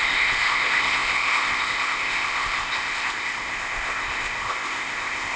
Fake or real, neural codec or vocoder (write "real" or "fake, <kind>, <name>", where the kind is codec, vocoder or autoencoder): fake, codec, ZipCodec